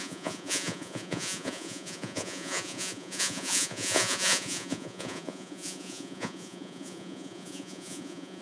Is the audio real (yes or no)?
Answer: no